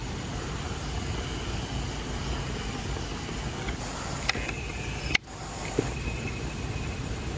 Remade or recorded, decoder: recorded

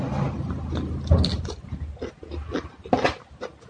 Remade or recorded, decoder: recorded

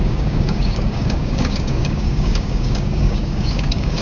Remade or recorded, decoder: remade, codec, DAC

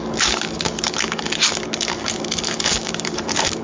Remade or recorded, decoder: remade, codec, DAC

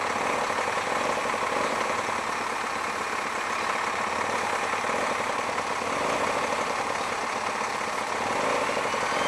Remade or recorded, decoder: recorded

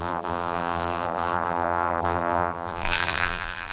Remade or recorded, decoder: remade, vocoder, BigVGAN v2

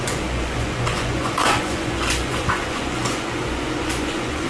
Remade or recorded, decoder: remade, vocoder, Vocos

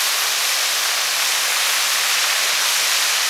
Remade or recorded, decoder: recorded